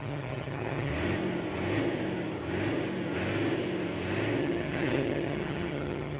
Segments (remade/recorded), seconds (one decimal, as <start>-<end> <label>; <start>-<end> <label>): 0.0-0.9 remade; 0.9-4.4 recorded; 4.4-6.2 remade